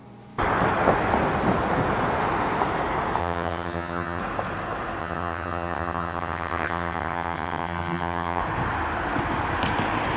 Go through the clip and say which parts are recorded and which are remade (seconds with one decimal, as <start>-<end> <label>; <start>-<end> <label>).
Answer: 0.0-3.2 recorded; 3.2-4.2 remade; 4.2-5.0 recorded; 5.0-8.4 remade; 8.4-10.2 recorded